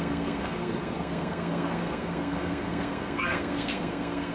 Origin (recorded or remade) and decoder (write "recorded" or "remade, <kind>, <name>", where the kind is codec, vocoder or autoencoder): remade, codec, SNAC